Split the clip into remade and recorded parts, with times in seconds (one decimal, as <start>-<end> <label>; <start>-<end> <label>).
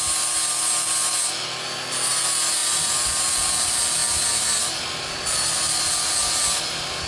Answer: 0.0-7.1 recorded